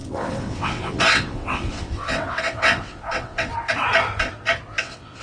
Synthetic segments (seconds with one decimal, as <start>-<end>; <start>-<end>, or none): 0.0-3.5; 4.8-5.2